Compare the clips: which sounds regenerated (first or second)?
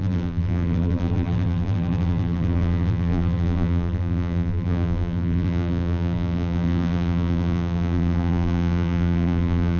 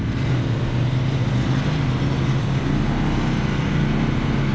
first